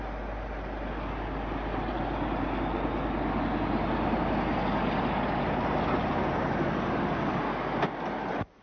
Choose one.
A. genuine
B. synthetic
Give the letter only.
A